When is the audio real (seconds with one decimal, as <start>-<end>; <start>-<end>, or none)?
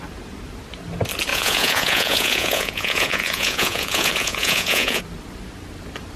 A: 0.0-1.3; 5.0-6.2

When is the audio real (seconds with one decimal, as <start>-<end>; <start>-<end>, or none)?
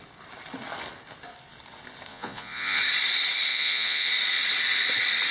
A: 0.0-2.1; 2.8-3.5; 4.1-5.3